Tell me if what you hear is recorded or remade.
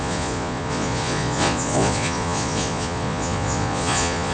remade